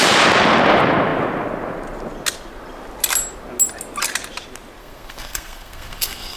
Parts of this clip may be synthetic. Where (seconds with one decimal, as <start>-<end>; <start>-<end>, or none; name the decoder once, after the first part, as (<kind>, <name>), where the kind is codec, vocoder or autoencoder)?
4.8-6.4 (codec, SNAC)